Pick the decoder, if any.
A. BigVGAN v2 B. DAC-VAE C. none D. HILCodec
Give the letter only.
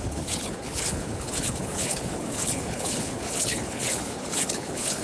D